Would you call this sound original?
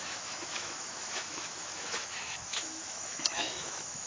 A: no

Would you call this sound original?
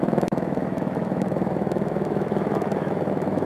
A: no